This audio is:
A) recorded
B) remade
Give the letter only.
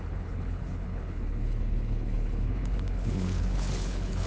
B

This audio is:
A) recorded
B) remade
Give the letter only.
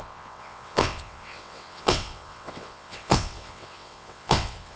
B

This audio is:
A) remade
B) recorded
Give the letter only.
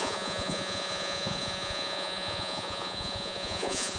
A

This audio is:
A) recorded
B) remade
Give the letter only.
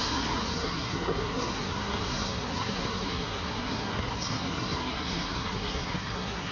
B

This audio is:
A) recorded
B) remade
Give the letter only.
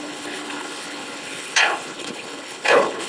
B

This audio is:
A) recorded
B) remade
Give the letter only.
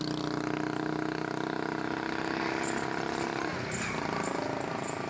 A